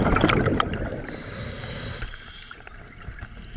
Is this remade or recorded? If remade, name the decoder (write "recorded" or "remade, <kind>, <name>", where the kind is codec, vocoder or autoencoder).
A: recorded